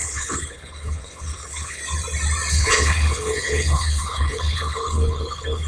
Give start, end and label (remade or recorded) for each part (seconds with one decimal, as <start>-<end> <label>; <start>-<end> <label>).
0.0-1.8 remade; 1.8-2.5 recorded; 2.5-5.7 remade